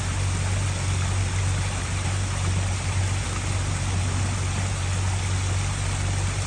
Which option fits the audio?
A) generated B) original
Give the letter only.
B